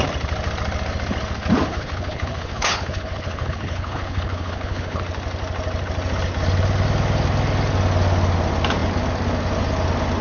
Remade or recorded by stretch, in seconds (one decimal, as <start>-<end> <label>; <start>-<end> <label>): 0.0-1.7 recorded; 1.7-5.0 remade; 5.0-10.2 recorded